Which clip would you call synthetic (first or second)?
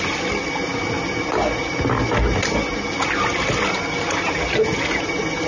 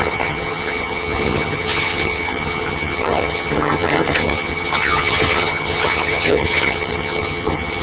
second